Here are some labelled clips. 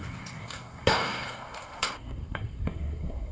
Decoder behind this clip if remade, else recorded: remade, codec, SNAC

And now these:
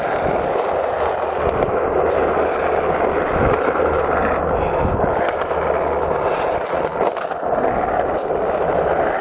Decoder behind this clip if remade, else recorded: recorded